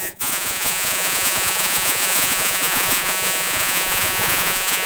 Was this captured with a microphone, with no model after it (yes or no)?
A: no